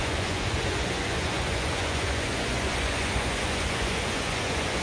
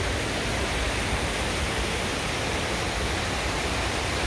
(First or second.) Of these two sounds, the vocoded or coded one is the first